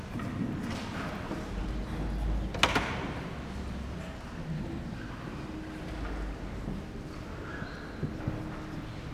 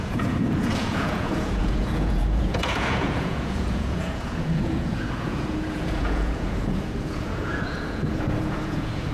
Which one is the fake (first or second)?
second